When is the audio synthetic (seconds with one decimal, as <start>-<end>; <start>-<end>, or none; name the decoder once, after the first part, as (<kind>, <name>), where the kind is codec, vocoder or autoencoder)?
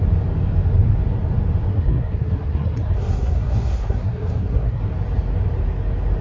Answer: 1.7-4.8 (codec, SNAC)